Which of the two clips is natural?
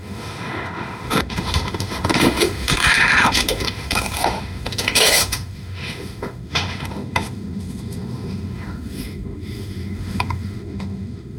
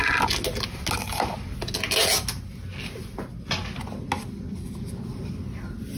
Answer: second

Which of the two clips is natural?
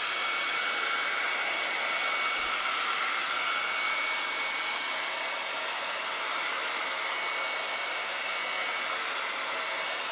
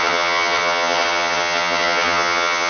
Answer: first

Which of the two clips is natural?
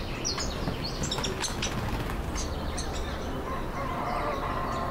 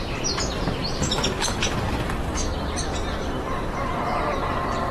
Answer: first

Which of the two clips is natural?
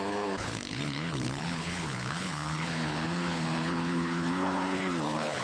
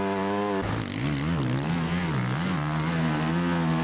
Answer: second